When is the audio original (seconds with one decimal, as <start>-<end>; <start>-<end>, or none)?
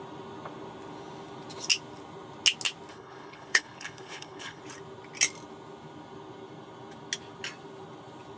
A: 0.0-2.9; 4.6-8.4